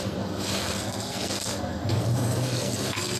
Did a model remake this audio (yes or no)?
yes